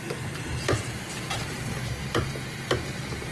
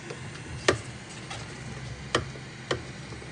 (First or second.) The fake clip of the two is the first